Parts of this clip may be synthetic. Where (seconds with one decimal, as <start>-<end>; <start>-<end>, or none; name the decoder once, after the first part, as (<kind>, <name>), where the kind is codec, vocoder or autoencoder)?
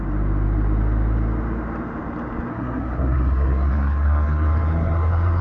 2.5-5.4 (codec, SNAC)